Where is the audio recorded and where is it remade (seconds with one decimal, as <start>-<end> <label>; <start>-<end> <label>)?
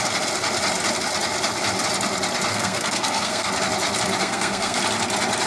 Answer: 0.0-2.5 recorded; 2.5-3.5 remade; 3.5-4.2 recorded; 4.2-4.8 remade; 4.8-5.5 recorded